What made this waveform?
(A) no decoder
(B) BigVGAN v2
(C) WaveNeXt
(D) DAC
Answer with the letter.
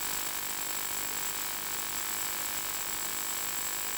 A